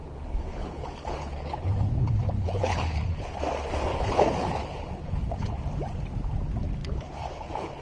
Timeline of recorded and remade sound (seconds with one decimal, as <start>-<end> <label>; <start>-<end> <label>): 0.0-3.4 remade; 3.4-3.9 recorded; 3.9-5.6 remade; 5.6-6.8 recorded; 6.8-7.8 remade